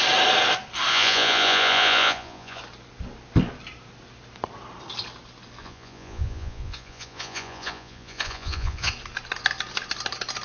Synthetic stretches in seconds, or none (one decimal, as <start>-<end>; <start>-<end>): 0.9-2.6; 5.6-8.9